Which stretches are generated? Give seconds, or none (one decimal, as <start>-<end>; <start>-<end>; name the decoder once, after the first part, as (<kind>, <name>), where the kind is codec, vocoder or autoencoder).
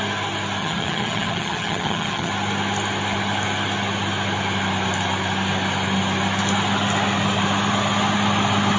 0.6-2.3 (vocoder, HiFi-GAN)